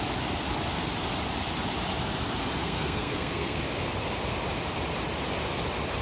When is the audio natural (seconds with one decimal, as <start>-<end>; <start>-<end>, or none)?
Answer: 0.0-2.6; 3.6-6.0